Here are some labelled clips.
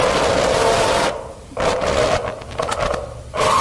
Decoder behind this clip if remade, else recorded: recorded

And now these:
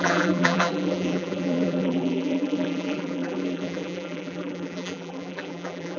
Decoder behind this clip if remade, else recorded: remade, vocoder, BigVGAN v2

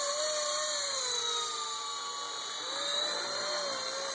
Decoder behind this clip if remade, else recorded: recorded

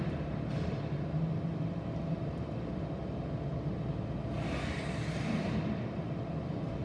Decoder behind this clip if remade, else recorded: recorded